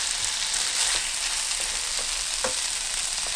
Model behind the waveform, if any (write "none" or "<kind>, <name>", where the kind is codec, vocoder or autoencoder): none